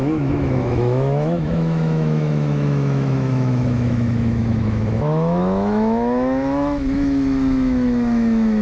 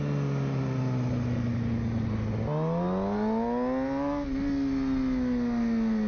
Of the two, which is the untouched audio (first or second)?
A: second